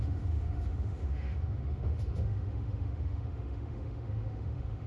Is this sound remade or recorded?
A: remade